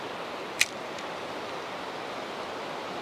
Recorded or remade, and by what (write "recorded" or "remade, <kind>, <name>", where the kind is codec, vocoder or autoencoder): recorded